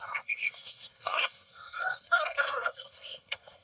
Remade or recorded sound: remade